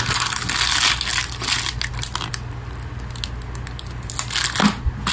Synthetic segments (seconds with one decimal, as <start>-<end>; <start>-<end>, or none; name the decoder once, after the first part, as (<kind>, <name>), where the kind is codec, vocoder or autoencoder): none